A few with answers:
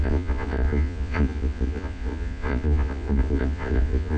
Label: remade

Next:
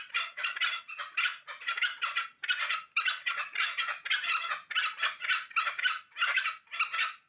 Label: recorded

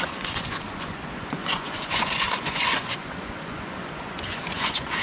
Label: remade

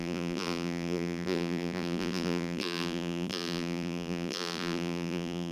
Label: remade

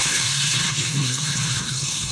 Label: remade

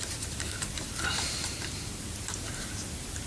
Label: remade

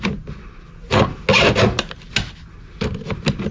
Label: recorded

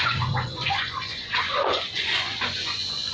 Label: remade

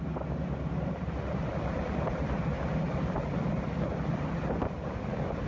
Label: recorded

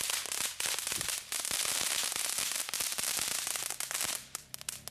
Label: recorded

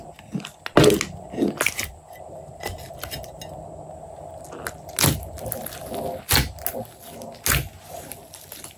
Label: recorded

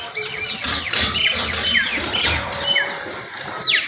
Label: recorded